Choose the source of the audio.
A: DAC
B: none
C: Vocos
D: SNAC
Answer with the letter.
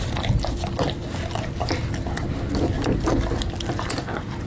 B